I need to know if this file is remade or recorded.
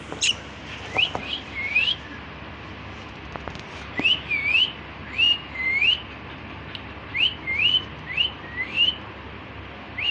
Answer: recorded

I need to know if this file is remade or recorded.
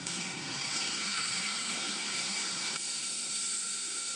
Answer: remade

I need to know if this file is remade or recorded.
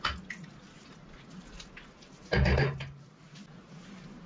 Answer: recorded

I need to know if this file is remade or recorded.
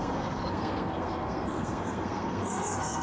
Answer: remade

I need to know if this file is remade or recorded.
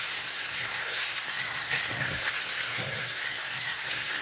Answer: remade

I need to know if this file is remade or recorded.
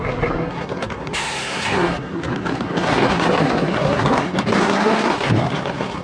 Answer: remade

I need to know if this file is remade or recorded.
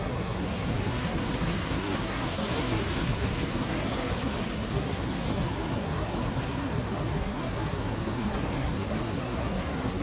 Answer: remade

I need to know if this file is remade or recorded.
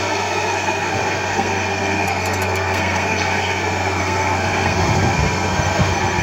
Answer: remade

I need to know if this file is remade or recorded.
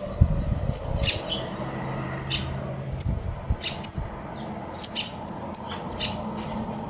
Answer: recorded